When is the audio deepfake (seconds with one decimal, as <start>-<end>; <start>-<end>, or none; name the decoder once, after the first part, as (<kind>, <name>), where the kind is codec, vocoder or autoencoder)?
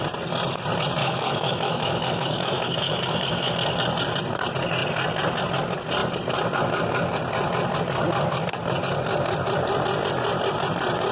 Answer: 1.0-3.5 (autoencoder, DAC-VAE)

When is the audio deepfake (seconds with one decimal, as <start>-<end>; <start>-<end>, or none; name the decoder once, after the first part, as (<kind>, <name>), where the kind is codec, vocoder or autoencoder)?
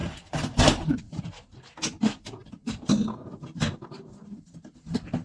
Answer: 0.0-1.2 (vocoder, BigVGAN v2)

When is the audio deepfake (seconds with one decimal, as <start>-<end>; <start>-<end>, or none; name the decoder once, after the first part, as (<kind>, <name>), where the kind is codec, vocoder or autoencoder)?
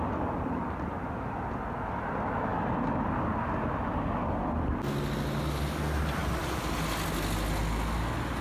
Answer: none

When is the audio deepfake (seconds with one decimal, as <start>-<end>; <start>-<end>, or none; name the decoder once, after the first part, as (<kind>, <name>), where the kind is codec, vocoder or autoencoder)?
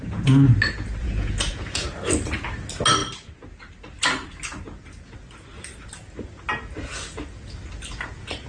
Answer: 1.0-1.8 (vocoder, Vocos)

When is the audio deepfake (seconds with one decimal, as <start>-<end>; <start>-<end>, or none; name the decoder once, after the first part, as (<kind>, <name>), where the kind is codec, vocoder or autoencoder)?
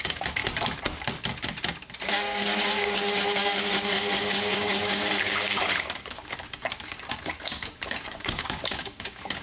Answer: 0.0-0.4 (codec, DAC); 2.1-9.4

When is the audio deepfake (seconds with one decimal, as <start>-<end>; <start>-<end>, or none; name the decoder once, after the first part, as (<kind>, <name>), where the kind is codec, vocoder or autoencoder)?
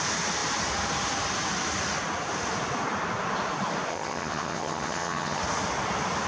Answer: 3.9-5.4 (vocoder, HiFi-GAN)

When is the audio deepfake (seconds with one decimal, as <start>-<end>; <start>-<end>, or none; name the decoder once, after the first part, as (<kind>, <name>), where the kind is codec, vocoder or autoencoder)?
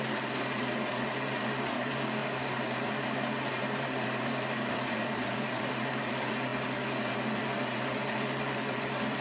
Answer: 2.2-5.7 (vocoder, BigVGAN v2)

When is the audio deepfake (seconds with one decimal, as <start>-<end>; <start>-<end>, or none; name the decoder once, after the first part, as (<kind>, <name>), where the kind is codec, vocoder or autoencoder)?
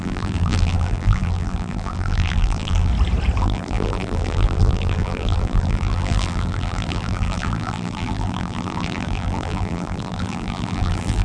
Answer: 0.0-2.9 (vocoder, BigVGAN v2); 3.4-11.2